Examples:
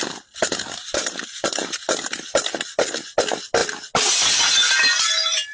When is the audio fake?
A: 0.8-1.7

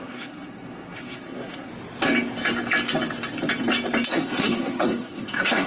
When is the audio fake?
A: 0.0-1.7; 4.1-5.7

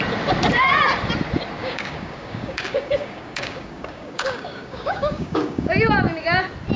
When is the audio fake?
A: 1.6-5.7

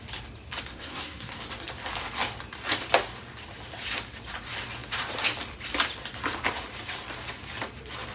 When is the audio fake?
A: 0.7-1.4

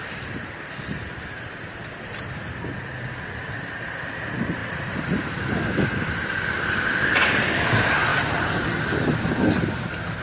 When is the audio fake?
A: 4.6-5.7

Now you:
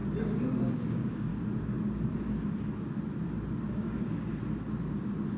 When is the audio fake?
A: 0.7-1.3; 3.7-4.3